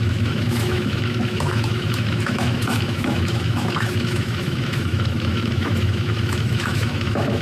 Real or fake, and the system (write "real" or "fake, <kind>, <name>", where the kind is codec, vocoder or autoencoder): fake, autoencoder, DAC-VAE